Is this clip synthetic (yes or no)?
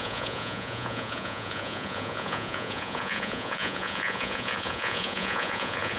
yes